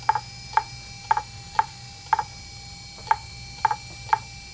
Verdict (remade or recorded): recorded